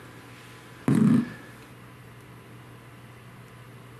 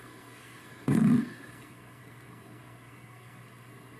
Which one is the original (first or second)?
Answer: first